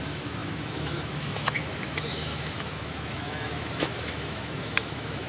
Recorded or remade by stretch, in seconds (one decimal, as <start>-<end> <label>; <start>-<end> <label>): 0.0-5.3 remade